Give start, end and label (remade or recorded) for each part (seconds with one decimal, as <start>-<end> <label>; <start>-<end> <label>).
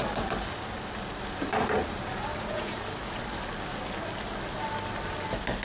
0.0-2.3 recorded; 2.3-2.8 remade; 2.8-5.6 recorded